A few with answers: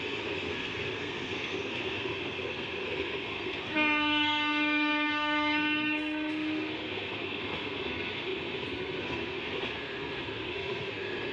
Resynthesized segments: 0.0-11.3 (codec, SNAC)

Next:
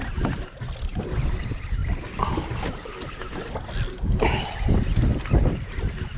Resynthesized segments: none

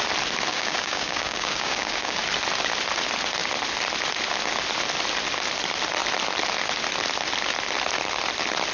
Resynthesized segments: 0.5-2.2 (codec, DAC)

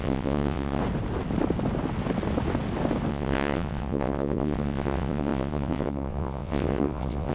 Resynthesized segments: 0.0-0.8 (vocoder, WaveNeXt); 3.1-7.3

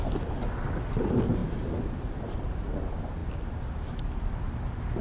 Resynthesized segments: none